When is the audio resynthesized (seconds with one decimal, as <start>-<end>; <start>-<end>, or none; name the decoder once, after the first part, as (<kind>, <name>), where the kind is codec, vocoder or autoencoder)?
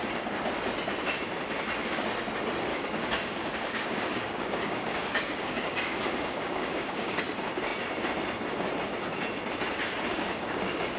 2.7-7.2 (codec, DAC); 10.1-11.0